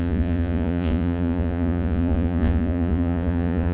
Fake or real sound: fake